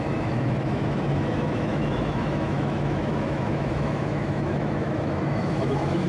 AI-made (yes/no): yes